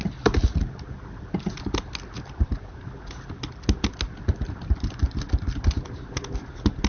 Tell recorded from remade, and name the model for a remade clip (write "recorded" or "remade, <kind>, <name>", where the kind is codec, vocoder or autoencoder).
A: recorded